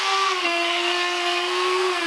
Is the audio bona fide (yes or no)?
no